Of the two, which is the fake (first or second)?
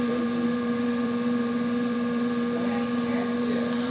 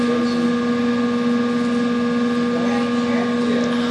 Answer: first